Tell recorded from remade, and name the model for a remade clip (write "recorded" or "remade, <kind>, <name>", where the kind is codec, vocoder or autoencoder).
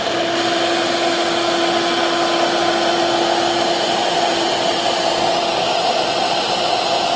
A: recorded